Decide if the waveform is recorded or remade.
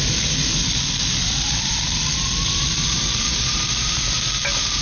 recorded